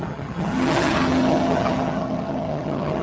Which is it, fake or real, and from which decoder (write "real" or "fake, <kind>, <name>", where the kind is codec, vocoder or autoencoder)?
fake, vocoder, HiFi-GAN